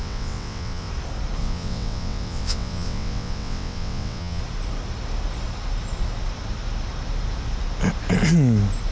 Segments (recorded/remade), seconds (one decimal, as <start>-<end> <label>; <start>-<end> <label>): 0.0-0.9 remade; 0.9-1.4 recorded; 1.4-4.4 remade; 4.4-8.9 recorded